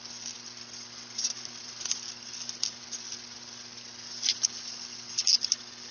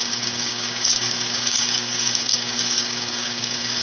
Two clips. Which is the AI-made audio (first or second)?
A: second